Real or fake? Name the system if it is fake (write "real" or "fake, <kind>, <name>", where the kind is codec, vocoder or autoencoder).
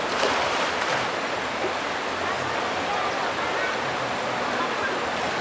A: real